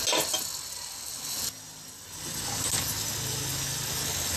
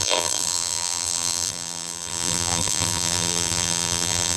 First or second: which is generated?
second